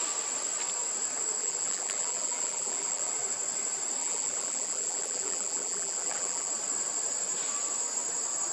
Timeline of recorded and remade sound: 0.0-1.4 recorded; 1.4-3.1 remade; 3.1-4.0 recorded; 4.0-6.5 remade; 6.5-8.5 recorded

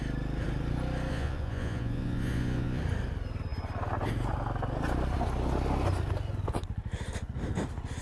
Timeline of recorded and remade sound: 0.0-1.1 recorded; 1.1-2.8 remade; 2.8-8.0 recorded

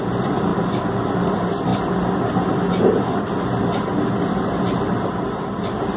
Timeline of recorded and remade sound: 0.0-0.5 recorded; 0.5-1.1 remade; 1.1-1.7 recorded; 1.7-5.3 remade; 5.3-6.0 recorded

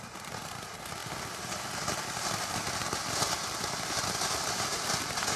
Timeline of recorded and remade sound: 0.0-5.4 recorded

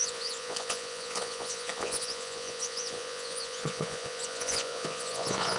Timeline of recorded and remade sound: 0.0-5.6 remade

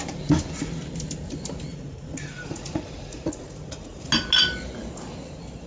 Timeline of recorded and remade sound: 0.0-1.7 recorded; 1.7-4.1 remade; 4.1-5.7 recorded